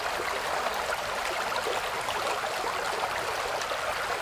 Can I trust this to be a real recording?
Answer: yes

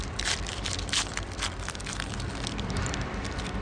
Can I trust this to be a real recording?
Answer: no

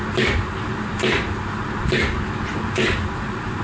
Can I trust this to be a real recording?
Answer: yes